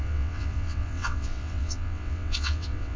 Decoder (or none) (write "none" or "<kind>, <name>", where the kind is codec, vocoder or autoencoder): vocoder, WaveNeXt